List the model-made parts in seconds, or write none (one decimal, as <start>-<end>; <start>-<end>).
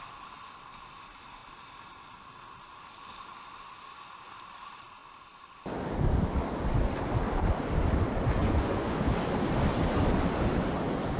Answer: 8.4-9.0